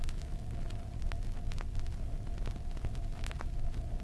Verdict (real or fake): real